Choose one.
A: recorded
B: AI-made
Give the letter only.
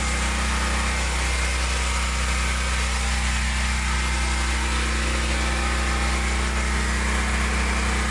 A